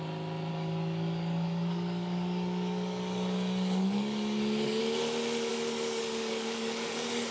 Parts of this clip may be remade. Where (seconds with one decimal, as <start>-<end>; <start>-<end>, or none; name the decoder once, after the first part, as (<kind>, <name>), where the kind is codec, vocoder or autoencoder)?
0.5-4.8 (codec, DAC); 5.5-7.3